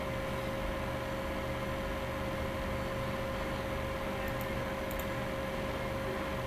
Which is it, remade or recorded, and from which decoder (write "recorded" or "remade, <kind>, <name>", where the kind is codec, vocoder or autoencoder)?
recorded